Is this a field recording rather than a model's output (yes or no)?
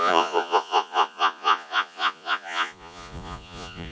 no